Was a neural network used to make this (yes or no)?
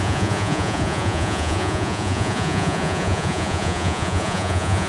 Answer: yes